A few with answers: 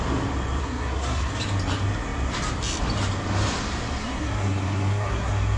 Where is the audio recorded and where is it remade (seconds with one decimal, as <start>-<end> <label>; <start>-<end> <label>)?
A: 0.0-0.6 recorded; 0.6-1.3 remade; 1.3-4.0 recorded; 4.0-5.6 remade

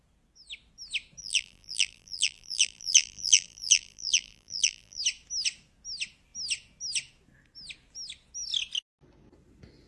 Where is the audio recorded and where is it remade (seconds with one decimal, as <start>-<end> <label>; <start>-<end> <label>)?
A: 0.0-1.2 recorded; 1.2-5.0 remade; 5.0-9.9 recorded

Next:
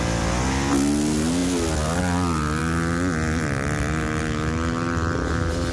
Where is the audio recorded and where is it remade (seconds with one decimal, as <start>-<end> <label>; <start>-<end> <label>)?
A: 0.0-5.7 recorded